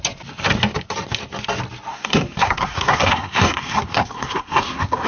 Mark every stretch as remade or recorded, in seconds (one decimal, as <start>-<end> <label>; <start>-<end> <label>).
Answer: 0.0-1.9 recorded; 1.9-5.1 remade

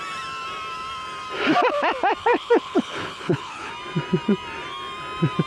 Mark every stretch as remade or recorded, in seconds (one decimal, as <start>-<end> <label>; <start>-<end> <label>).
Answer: 0.0-2.2 recorded; 2.2-3.7 remade; 3.7-5.5 recorded

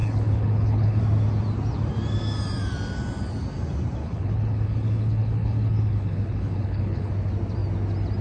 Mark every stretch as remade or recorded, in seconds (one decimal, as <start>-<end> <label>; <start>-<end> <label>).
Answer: 0.0-1.0 remade; 1.0-4.0 recorded; 4.0-7.1 remade; 7.1-8.2 recorded

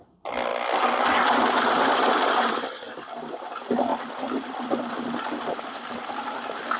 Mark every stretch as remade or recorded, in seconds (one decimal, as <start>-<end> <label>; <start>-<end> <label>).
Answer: 0.0-6.8 recorded

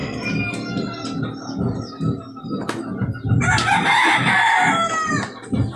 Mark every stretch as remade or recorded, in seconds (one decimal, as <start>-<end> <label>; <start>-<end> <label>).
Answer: 0.0-5.8 recorded

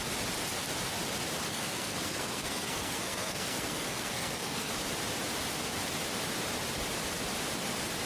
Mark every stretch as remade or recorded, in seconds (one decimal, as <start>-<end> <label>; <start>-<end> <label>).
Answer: 0.0-1.5 recorded; 1.5-4.7 remade; 4.7-8.1 recorded